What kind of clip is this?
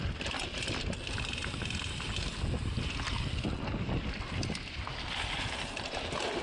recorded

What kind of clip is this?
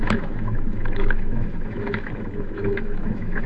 remade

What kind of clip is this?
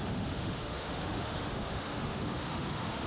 remade